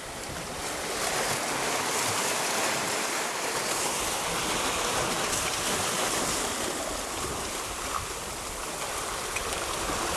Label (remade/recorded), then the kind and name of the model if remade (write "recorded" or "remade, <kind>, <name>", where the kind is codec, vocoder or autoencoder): recorded